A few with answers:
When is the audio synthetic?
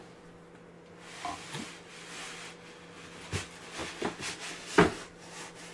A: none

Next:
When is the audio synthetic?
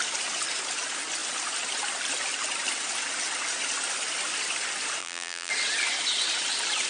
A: 5.0-5.5 (vocoder, BigVGAN v2)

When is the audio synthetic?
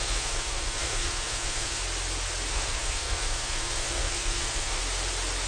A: 0.0-1.8 (codec, SNAC); 2.5-4.8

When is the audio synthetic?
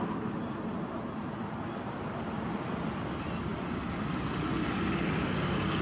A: none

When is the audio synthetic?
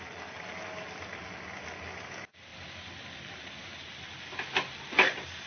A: none